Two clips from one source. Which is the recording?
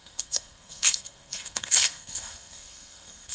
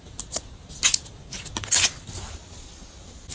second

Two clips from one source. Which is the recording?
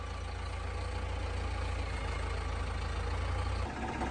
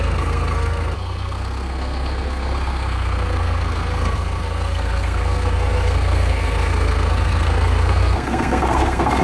first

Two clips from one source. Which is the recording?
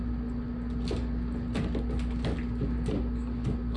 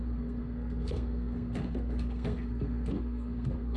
first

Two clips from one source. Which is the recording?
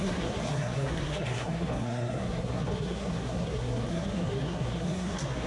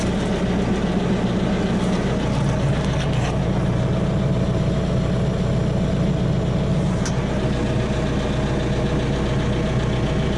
second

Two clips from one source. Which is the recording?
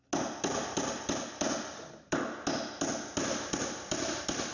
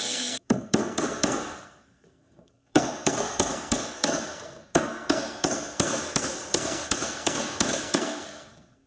first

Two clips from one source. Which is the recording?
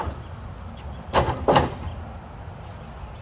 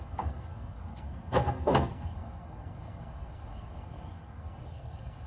first